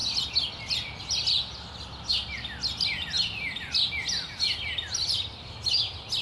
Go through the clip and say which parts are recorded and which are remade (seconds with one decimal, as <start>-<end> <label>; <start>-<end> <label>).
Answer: 0.0-6.2 recorded